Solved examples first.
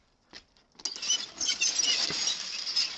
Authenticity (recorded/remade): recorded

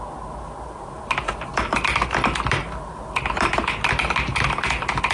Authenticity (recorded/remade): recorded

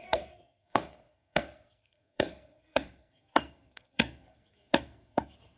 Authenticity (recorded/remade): remade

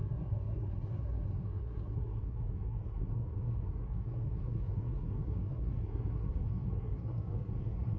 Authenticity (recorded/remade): remade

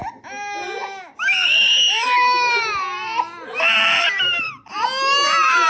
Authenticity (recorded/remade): recorded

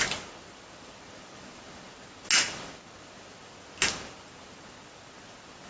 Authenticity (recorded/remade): recorded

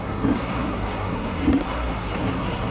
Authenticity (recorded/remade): remade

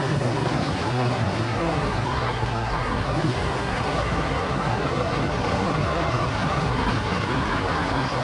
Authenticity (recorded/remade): remade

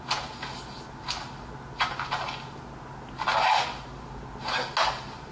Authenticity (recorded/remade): recorded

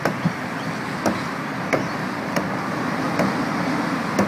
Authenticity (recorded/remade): recorded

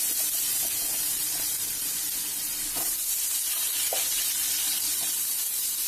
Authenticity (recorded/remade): recorded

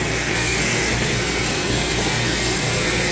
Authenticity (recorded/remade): remade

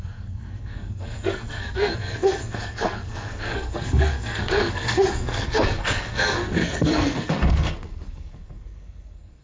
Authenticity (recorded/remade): remade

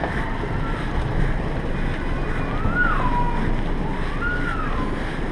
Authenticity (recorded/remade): recorded